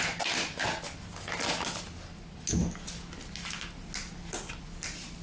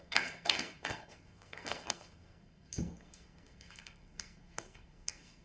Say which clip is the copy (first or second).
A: second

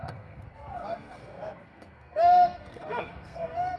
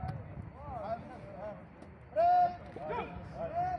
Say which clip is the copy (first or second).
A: first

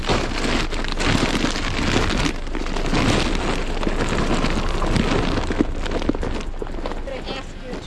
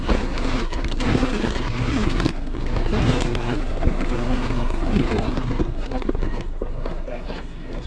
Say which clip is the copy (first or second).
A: second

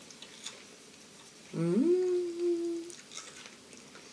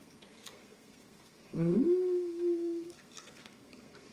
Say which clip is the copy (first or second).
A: second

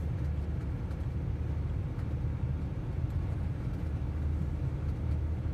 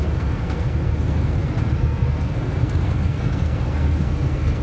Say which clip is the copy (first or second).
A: second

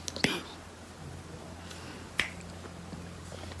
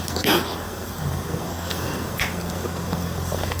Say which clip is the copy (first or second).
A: second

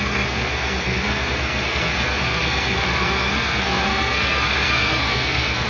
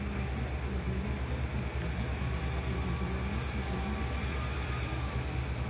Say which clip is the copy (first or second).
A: first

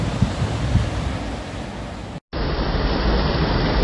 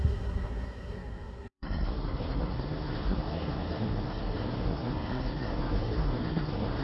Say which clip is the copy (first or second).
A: second